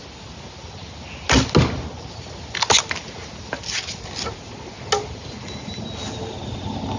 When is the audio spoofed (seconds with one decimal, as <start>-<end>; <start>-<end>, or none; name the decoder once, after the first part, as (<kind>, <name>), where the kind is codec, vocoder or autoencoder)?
none